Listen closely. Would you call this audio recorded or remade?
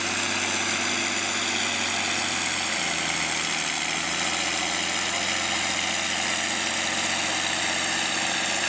recorded